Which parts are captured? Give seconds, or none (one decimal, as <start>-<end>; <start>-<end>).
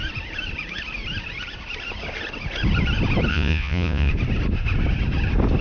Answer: 0.0-3.3; 4.1-5.6